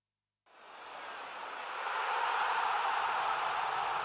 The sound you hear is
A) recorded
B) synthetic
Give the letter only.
A